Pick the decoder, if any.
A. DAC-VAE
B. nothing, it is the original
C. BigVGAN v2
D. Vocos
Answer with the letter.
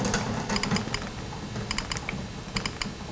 B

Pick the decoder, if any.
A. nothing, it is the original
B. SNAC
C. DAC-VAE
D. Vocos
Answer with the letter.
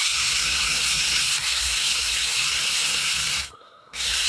B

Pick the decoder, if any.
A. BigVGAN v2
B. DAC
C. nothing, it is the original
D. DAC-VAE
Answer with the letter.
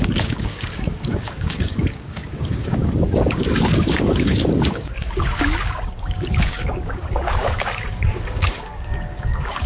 B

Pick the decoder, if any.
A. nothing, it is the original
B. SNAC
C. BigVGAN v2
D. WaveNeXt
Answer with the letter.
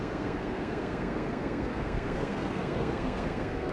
B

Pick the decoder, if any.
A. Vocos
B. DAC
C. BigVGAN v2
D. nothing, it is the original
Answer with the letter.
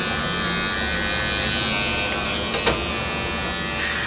D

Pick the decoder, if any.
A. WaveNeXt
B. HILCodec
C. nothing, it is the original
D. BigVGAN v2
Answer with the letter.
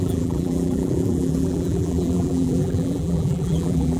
D